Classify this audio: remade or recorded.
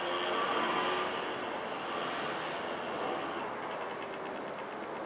recorded